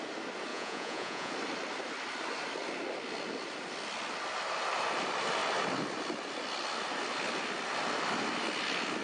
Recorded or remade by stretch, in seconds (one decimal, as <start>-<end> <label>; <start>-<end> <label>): 0.0-0.5 recorded; 0.5-1.3 remade; 1.3-9.0 recorded